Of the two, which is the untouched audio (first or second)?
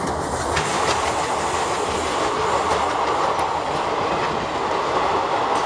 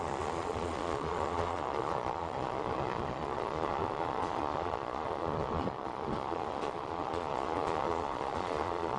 first